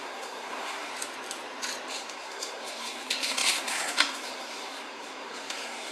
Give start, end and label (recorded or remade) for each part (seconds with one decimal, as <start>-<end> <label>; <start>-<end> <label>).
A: 0.0-0.9 remade; 0.9-1.9 recorded; 1.9-5.9 remade